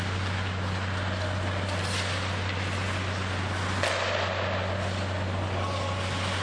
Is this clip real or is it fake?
real